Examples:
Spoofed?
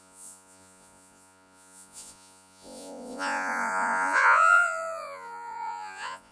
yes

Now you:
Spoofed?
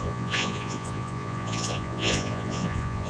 yes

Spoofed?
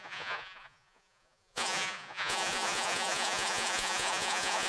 yes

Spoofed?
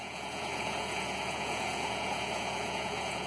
yes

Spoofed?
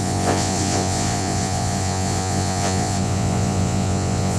yes